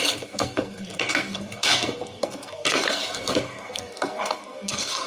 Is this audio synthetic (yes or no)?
yes